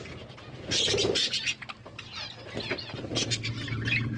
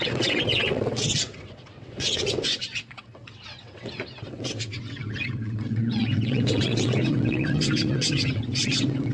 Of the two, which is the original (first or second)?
first